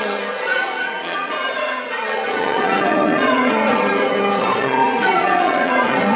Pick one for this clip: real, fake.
fake